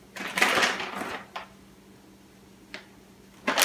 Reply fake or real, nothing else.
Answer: real